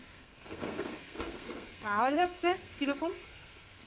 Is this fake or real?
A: fake